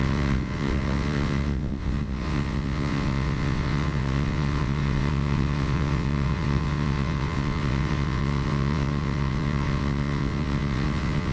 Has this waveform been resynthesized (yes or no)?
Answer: yes